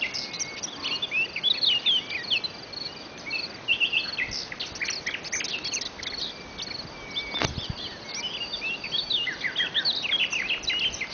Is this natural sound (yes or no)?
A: yes